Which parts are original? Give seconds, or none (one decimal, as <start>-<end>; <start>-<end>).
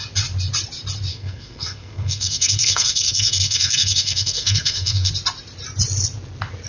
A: 0.0-1.1; 5.1-6.7